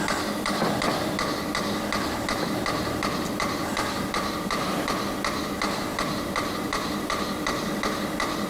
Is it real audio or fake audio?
real